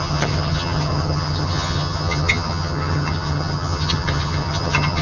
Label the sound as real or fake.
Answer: fake